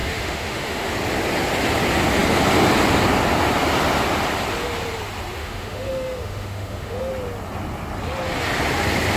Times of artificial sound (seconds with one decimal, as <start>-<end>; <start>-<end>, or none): 0.0-0.9; 5.4-7.1